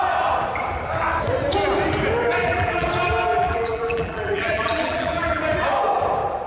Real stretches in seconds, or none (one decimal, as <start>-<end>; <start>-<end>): 0.0-2.4; 2.9-3.3; 5.4-6.5